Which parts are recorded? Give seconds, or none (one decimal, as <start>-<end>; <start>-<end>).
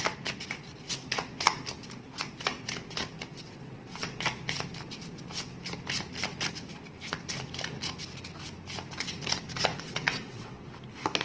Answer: 0.0-3.3; 4.2-9.7; 10.6-11.2